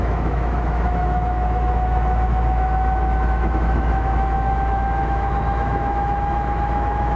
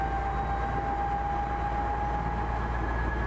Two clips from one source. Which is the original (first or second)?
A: second